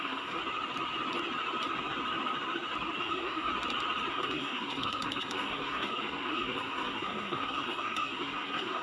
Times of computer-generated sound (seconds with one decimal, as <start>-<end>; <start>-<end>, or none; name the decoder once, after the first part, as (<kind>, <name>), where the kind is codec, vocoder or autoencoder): 0.0-0.4 (codec, SNAC); 3.0-3.5; 4.1-8.8